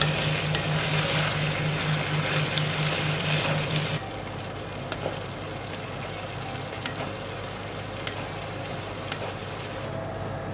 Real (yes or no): yes